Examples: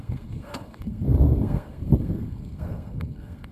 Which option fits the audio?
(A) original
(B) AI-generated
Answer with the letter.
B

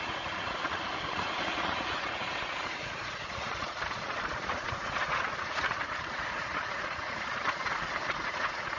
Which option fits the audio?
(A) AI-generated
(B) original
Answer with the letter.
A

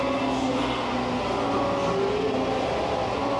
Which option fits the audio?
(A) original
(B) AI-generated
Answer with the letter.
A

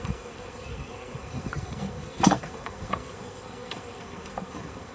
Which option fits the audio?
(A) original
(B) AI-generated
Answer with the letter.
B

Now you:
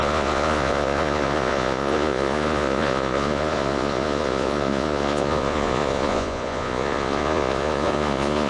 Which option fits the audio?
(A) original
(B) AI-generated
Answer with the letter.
B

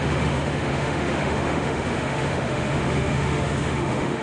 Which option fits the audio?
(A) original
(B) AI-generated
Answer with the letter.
B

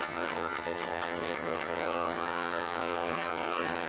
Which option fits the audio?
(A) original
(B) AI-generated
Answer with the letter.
B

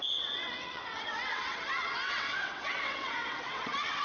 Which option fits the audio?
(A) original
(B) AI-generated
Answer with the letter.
B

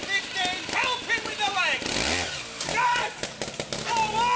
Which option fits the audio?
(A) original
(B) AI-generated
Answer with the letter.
A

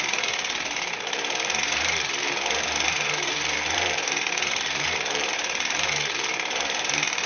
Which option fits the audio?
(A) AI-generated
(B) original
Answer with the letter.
A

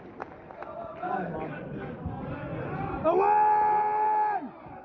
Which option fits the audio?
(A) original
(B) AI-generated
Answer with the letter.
A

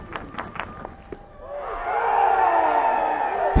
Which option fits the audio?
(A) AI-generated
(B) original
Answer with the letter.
B